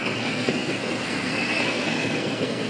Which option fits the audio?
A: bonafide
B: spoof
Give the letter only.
B